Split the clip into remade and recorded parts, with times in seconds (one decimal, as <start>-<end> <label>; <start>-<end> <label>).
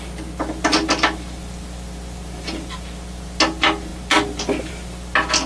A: 0.0-5.5 recorded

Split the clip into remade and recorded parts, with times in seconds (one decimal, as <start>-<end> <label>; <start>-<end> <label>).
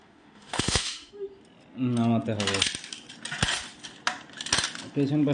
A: 0.0-1.1 remade; 1.1-5.3 recorded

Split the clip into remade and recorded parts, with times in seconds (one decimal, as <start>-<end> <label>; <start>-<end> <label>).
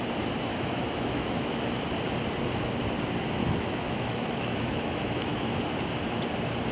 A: 0.0-0.5 recorded; 0.5-1.6 remade; 1.6-3.4 recorded; 3.4-5.6 remade; 5.6-6.7 recorded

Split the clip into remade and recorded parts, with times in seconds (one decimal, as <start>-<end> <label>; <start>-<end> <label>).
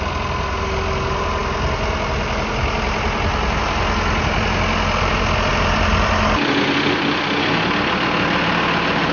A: 0.0-9.1 recorded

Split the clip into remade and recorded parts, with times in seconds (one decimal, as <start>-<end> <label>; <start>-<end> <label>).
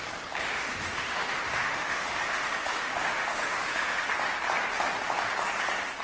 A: 0.0-0.4 recorded; 0.4-4.0 remade; 4.0-6.0 recorded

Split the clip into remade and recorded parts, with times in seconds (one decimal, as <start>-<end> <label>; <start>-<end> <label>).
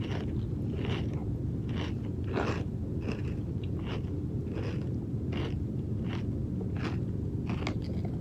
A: 0.0-8.2 recorded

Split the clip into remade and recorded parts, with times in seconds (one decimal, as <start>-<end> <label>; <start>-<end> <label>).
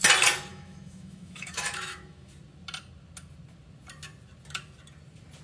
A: 0.0-0.5 recorded; 0.5-2.3 remade; 2.3-5.4 recorded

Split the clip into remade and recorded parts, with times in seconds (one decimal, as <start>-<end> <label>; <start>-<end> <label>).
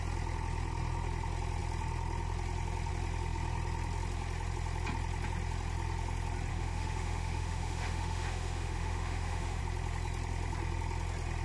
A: 0.0-6.5 recorded; 6.5-9.6 remade; 9.6-11.4 recorded